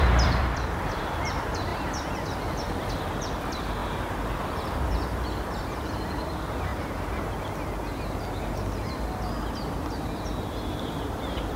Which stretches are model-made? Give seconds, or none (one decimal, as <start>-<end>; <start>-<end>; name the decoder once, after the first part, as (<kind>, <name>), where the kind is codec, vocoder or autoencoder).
0.0-3.8 (vocoder, BigVGAN v2); 5.6-6.7; 10.8-11.6